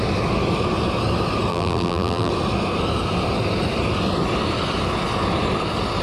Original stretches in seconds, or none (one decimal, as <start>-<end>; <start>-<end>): 0.0-1.5; 2.3-6.0